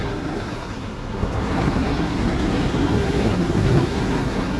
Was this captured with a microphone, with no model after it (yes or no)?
no